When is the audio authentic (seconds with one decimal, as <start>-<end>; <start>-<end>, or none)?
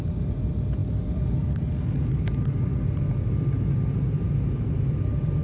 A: 0.0-5.4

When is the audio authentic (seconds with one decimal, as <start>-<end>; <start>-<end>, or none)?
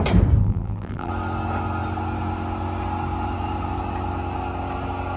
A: 0.0-0.4; 1.1-5.2